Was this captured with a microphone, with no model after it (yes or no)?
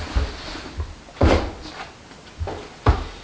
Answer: yes